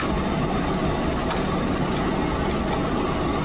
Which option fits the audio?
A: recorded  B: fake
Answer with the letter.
A